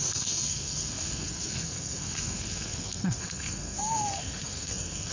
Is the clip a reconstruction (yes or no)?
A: yes